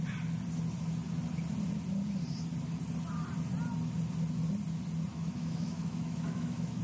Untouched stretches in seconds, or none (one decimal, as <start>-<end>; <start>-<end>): 0.0-5.1